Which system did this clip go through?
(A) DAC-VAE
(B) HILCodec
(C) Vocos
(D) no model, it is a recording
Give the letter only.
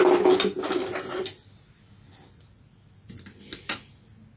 D